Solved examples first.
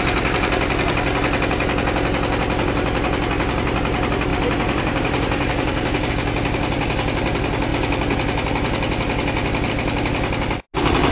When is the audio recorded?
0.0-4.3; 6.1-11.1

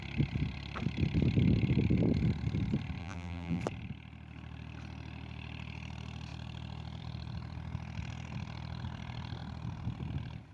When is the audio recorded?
0.0-3.0; 3.6-10.5